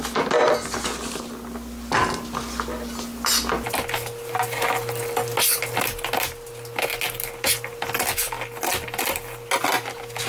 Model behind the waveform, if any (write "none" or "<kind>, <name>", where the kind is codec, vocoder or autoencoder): none